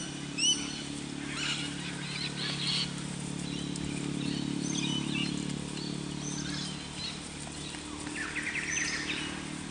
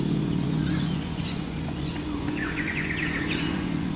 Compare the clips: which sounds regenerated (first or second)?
second